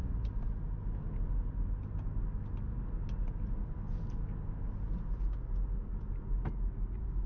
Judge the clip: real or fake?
real